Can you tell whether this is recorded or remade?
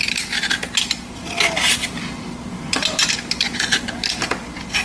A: recorded